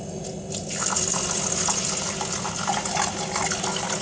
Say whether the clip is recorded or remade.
recorded